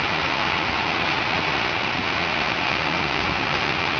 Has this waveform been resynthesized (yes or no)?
yes